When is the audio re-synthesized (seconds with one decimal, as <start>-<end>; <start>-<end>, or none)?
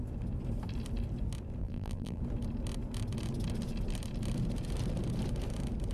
1.6-2.2